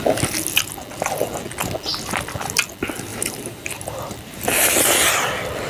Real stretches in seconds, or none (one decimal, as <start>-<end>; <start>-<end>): 0.0-3.1; 4.8-5.7